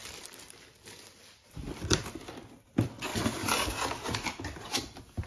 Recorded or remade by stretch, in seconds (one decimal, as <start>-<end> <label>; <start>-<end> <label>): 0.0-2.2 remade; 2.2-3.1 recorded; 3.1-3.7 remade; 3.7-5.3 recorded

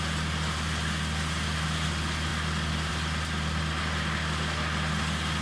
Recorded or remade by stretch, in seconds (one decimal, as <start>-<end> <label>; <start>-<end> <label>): 0.0-5.4 recorded

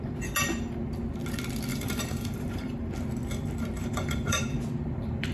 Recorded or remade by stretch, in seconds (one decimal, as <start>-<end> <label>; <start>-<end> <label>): 0.0-1.7 recorded; 1.7-2.9 remade; 2.9-3.8 recorded; 3.8-4.4 remade; 4.4-5.3 recorded

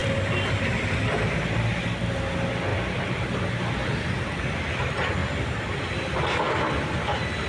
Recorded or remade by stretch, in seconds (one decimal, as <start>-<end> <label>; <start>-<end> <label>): 0.0-1.9 remade; 1.9-2.7 recorded; 2.7-4.2 remade; 4.2-7.5 recorded

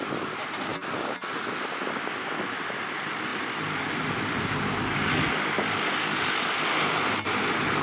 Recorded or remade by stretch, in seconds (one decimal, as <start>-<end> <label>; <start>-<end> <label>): 0.0-7.8 remade

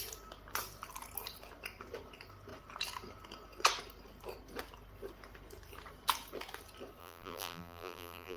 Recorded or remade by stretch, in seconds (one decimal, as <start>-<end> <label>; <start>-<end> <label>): 0.0-7.0 recorded; 7.0-8.4 remade

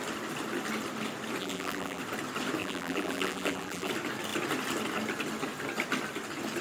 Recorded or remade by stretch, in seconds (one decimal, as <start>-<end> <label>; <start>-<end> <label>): 0.0-1.4 recorded; 1.4-2.0 remade; 2.0-2.6 recorded; 2.6-3.9 remade; 3.9-6.6 recorded